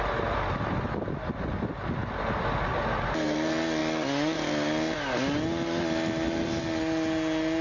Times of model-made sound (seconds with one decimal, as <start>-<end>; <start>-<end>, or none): none